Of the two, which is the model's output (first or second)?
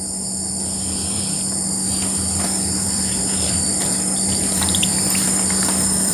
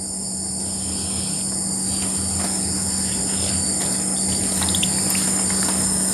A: first